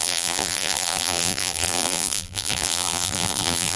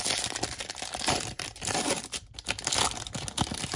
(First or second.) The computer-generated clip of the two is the first